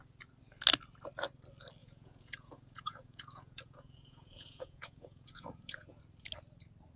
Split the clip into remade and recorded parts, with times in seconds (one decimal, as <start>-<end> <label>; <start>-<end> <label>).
0.0-1.8 recorded; 1.8-6.0 remade; 6.0-7.0 recorded